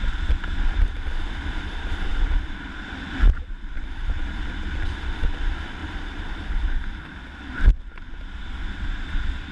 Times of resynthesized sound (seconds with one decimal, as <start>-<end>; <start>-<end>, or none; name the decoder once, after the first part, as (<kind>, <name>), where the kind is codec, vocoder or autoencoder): 2.1-5.2 (vocoder, BigVGAN v2); 5.8-7.0